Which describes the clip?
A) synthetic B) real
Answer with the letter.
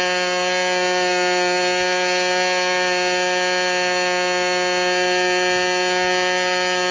B